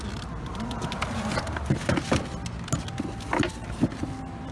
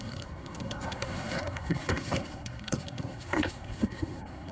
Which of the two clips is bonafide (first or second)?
first